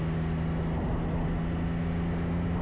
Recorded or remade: recorded